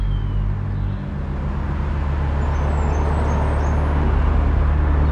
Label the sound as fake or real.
real